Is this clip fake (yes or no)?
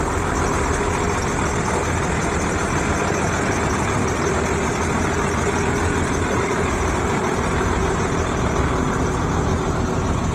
no